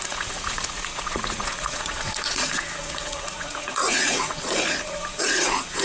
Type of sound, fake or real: fake